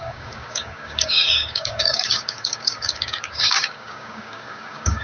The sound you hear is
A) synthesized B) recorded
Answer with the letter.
A